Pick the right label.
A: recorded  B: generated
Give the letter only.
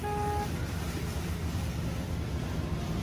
A